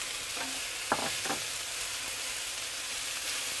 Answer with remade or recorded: recorded